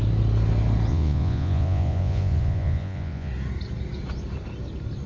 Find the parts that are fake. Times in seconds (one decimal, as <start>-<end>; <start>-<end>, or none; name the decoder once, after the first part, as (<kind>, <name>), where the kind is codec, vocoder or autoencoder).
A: 0.9-3.3 (vocoder, Vocos)

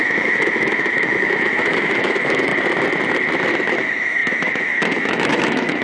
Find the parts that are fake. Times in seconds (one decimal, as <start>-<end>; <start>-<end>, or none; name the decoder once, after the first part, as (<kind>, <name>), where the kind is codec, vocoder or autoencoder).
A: 0.0-2.5 (autoencoder, DAC-VAE); 3.8-5.8

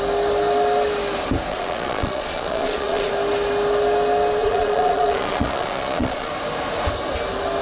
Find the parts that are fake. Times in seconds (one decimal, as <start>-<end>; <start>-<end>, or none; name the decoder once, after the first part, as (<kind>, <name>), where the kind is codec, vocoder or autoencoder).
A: 1.5-3.1 (vocoder, Vocos); 4.4-6.3

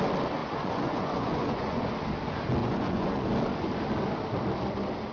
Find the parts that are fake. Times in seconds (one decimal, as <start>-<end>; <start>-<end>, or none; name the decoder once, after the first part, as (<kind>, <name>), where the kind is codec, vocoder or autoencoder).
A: 0.4-1.9 (vocoder, Vocos); 2.6-3.3

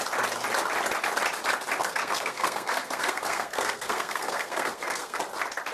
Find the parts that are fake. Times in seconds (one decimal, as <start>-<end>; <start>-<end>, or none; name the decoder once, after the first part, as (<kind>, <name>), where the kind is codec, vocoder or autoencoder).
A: 1.8-5.2 (codec, SNAC)

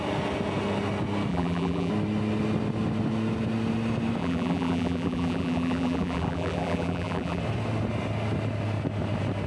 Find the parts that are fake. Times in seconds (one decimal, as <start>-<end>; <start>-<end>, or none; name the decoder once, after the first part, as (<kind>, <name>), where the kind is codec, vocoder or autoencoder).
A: 1.3-1.9 (vocoder, BigVGAN v2); 4.2-7.4

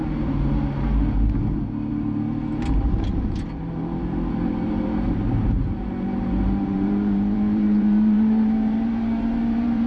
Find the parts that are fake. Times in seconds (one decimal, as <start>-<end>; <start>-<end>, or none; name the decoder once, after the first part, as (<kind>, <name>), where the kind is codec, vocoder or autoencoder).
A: 1.9-9.9 (vocoder, BigVGAN v2)